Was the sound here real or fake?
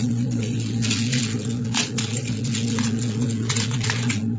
fake